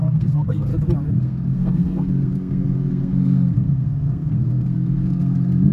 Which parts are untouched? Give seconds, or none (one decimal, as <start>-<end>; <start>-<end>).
0.7-1.2